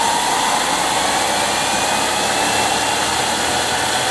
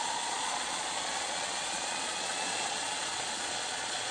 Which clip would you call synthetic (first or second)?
second